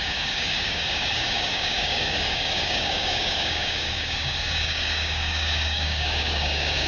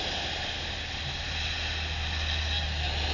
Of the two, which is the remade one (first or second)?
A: first